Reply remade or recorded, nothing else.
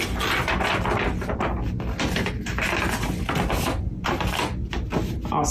recorded